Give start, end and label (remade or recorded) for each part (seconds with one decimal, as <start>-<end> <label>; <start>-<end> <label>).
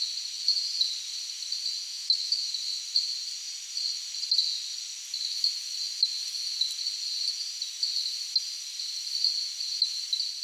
0.0-1.9 recorded; 1.9-2.5 remade; 2.5-10.4 recorded